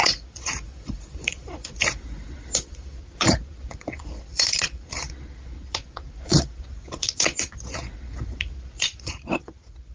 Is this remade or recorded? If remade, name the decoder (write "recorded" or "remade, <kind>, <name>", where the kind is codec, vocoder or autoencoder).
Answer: remade, vocoder, Vocos